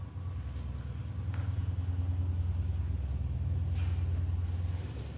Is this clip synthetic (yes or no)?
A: no